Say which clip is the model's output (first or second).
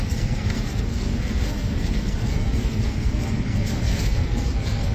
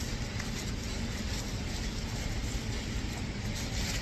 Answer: first